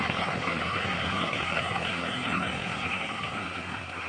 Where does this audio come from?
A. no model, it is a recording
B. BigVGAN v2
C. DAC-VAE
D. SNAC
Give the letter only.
D